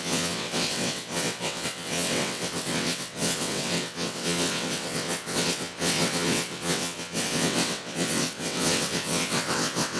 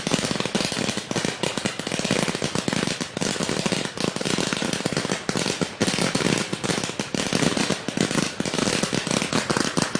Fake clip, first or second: first